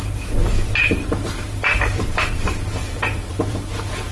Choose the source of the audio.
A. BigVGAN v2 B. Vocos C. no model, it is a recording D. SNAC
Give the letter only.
A